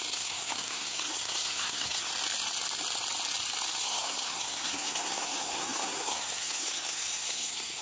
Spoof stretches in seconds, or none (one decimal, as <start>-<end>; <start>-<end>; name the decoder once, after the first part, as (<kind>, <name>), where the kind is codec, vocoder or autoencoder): 0.0-2.1 (codec, SNAC); 3.8-7.8